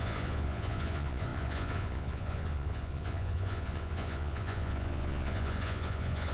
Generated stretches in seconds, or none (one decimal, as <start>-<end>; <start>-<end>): 0.0-6.3